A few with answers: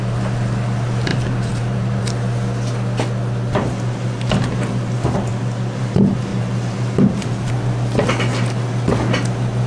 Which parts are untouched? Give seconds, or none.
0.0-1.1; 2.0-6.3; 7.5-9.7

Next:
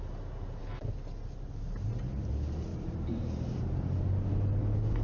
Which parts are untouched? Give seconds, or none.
0.0-2.7; 3.6-5.0

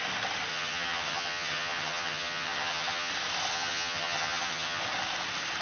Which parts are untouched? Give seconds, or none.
0.0-0.5; 3.1-3.5; 4.8-5.6

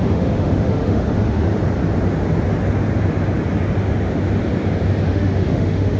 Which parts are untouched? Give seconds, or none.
1.5-5.1

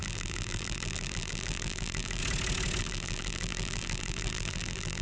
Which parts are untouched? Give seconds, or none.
2.2-2.8